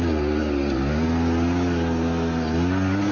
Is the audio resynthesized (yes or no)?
no